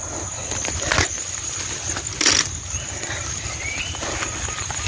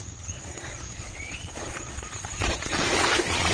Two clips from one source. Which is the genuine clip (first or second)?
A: first